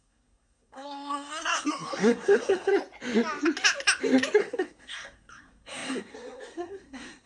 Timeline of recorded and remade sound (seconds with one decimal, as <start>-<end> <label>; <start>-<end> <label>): 0.0-2.7 remade; 2.7-4.4 recorded; 4.4-7.3 remade